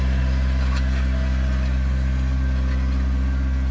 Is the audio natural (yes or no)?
yes